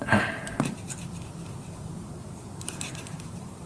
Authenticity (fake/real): fake